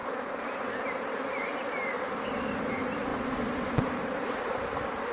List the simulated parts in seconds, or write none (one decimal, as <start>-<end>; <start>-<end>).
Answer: 0.0-3.1; 3.7-5.1